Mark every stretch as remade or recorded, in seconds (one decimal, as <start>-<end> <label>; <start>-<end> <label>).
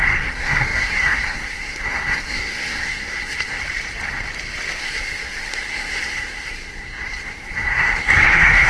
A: 0.0-3.6 remade; 3.6-4.8 recorded; 4.8-8.7 remade